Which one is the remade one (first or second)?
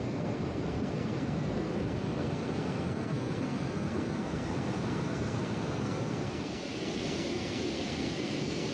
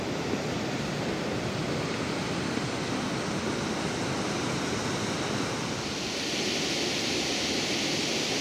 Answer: first